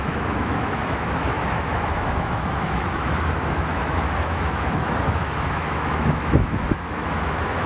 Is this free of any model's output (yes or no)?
no